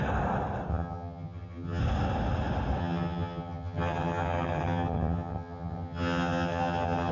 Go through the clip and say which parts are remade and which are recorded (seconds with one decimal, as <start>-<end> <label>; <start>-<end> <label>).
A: 0.0-0.7 recorded; 0.7-1.8 remade; 1.8-2.8 recorded; 2.8-7.1 remade

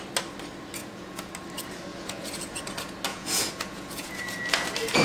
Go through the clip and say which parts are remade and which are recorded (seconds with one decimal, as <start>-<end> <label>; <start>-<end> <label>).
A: 0.0-0.8 recorded; 0.8-1.3 remade; 1.3-1.9 recorded; 1.9-2.6 remade; 2.6-3.1 recorded; 3.1-4.4 remade; 4.4-5.0 recorded

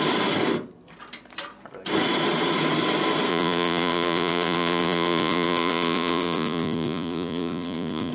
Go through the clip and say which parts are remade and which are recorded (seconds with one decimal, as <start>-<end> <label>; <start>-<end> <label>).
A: 0.0-3.3 recorded; 3.3-8.1 remade

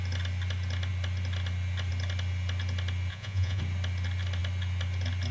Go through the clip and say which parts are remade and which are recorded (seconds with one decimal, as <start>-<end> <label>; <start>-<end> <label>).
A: 0.0-3.1 recorded; 3.1-3.6 remade; 3.6-5.3 recorded

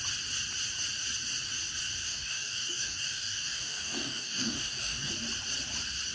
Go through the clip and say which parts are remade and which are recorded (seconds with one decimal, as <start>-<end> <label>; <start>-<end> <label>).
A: 0.0-2.0 recorded; 2.0-5.1 remade; 5.1-6.1 recorded

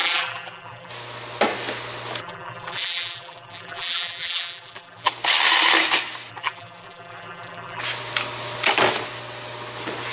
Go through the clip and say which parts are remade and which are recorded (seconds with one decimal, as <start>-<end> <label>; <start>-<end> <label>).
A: 0.0-0.9 remade; 0.9-2.2 recorded; 2.2-5.1 remade; 5.1-6.3 recorded; 6.3-7.8 remade; 7.8-10.1 recorded

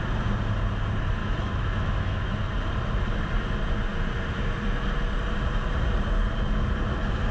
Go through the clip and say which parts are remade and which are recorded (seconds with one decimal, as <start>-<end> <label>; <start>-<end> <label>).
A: 0.0-1.2 recorded; 1.2-2.4 remade; 2.4-7.3 recorded

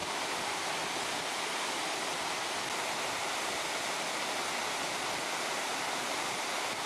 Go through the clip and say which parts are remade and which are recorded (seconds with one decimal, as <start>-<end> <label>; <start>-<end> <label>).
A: 0.0-2.2 remade; 2.2-6.9 recorded